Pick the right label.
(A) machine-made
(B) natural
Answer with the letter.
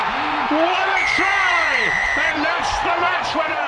A